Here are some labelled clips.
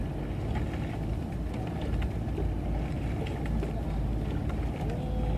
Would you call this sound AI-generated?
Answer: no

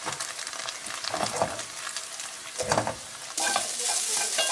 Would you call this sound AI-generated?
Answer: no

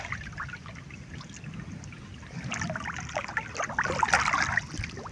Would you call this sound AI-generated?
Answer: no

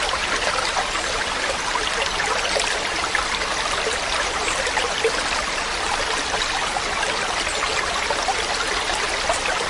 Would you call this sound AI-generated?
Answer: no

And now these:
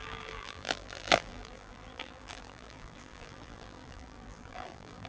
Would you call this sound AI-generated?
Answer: yes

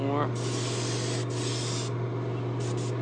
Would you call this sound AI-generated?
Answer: no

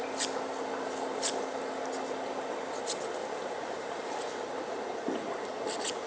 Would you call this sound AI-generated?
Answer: no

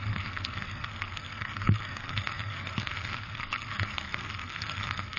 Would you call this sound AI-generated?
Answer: yes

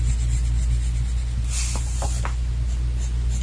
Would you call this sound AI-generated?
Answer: no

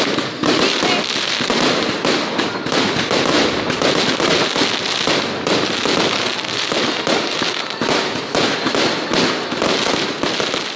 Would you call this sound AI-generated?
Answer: no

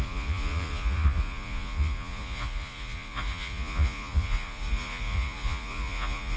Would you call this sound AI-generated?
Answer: yes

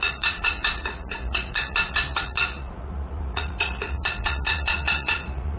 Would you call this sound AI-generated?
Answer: yes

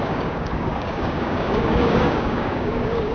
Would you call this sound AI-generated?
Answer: yes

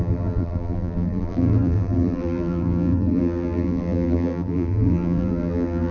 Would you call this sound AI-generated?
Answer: yes